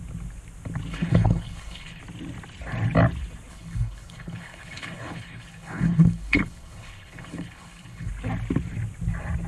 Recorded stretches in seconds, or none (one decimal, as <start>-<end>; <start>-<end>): 0.0-0.9; 2.0-3.5; 8.1-9.5